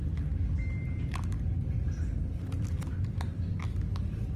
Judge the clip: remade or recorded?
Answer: recorded